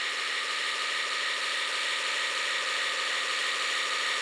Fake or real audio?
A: real